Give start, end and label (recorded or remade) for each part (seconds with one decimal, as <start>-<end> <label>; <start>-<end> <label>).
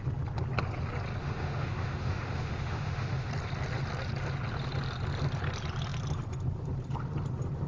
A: 0.0-1.2 recorded; 1.2-3.3 remade; 3.3-7.7 recorded